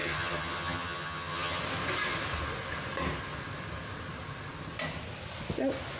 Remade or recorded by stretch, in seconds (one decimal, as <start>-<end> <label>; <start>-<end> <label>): 0.0-1.6 remade; 1.6-6.0 recorded